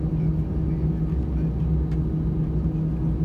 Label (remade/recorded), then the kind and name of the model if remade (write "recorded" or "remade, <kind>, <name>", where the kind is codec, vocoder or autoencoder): recorded